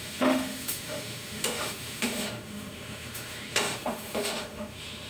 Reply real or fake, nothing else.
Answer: fake